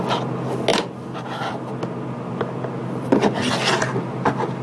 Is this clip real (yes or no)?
yes